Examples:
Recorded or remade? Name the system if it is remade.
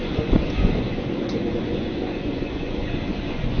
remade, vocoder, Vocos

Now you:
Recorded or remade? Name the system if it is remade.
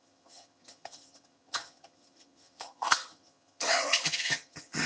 remade, vocoder, HiFi-GAN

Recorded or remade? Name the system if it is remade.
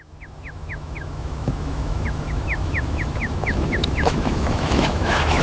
remade, autoencoder, DAC-VAE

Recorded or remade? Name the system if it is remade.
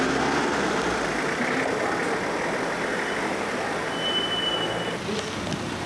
recorded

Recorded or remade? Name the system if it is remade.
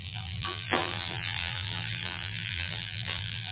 remade, vocoder, BigVGAN v2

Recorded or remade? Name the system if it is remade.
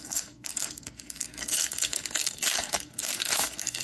remade, codec, SNAC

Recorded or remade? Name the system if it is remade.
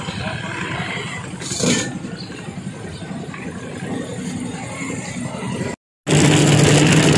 recorded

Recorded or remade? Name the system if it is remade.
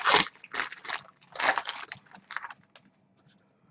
recorded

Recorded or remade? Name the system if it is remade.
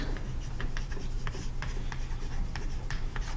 remade, vocoder, BigVGAN v2